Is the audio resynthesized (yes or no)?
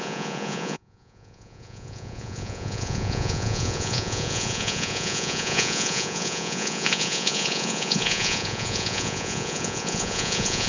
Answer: yes